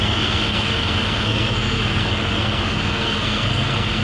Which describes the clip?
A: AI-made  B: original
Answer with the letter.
A